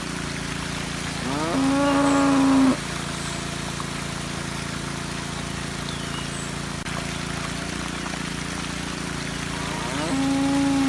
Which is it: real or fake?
real